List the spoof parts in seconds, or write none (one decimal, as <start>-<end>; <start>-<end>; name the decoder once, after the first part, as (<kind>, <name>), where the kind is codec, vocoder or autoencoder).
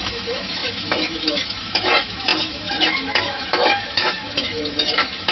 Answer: 0.0-5.3 (autoencoder, DAC-VAE)